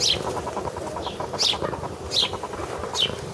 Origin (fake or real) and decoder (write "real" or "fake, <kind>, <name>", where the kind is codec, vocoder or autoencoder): real